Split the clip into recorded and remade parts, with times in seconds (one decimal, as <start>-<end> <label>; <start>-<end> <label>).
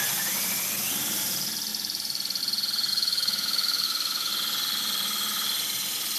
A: 0.0-2.9 recorded; 2.9-4.3 remade; 4.3-6.2 recorded